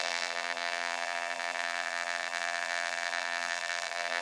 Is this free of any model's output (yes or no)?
no